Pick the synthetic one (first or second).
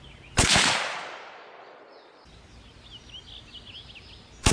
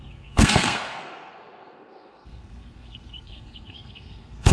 second